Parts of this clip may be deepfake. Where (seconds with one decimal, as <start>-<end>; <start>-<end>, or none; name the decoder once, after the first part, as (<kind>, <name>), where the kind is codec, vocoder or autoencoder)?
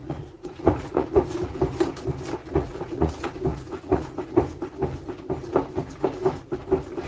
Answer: 0.0-1.6 (vocoder, Vocos); 2.4-3.1; 3.5-4.4